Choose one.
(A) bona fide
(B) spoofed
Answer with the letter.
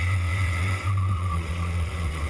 B